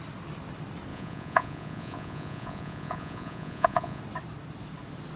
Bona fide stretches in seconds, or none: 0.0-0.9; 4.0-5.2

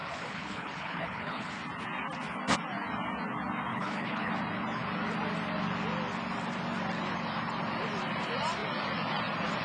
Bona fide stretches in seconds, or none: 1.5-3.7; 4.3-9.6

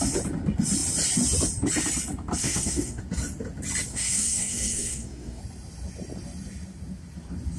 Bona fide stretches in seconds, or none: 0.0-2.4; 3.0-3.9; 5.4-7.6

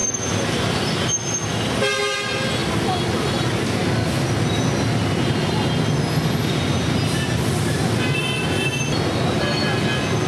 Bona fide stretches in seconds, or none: 0.0-10.3